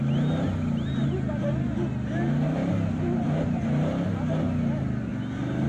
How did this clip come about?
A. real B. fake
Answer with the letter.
A